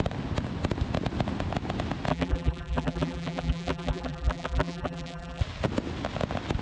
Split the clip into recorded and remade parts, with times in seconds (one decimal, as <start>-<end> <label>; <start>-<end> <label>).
0.0-2.1 recorded; 2.1-5.4 remade; 5.4-6.6 recorded